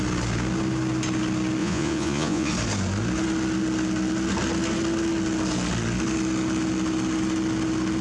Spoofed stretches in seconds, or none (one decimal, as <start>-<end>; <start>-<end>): 1.6-2.5